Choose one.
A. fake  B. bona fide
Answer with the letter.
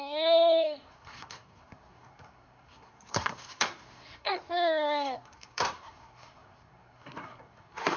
A